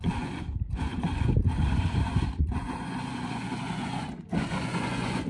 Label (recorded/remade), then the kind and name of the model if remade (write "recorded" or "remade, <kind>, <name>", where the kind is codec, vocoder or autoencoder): remade, vocoder, Vocos